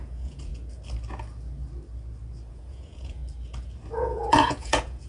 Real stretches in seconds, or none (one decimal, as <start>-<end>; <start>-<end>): 0.5-2.5; 3.2-3.9